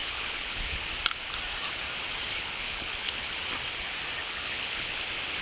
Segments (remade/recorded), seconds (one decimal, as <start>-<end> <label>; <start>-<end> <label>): 0.0-0.8 remade; 0.8-2.3 recorded; 2.3-3.3 remade; 3.3-4.2 recorded; 4.2-4.9 remade; 4.9-5.4 recorded